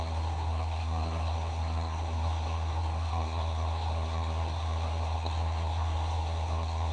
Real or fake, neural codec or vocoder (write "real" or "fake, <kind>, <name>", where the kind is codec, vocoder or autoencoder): fake, codec, SNAC